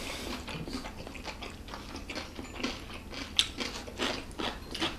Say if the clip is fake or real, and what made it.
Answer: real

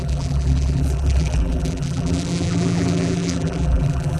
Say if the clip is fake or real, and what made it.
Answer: fake, vocoder, BigVGAN v2